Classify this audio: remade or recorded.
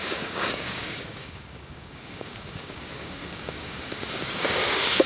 remade